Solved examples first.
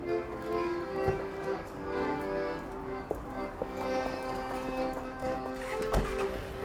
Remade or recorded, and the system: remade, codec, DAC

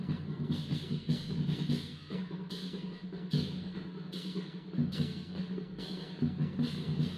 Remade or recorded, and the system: remade, codec, SNAC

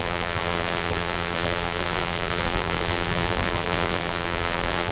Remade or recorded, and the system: remade, vocoder, BigVGAN v2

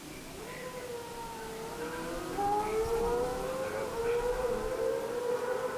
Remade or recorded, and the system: recorded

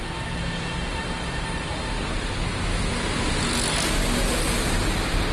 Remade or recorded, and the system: recorded